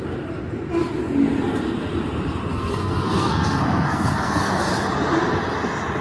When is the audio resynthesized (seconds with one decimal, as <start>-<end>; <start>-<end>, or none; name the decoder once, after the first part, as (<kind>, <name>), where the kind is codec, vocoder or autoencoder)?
2.5-4.6 (codec, SNAC)